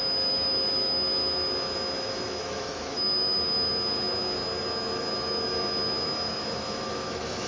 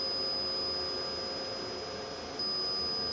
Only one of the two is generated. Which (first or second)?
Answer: first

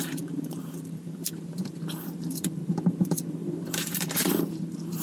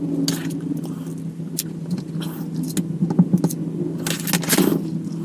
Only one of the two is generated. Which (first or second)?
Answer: first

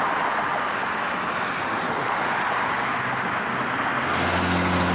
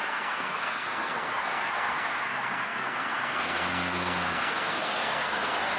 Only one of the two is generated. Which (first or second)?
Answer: second